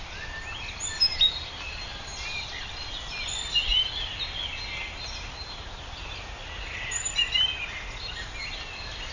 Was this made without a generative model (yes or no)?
yes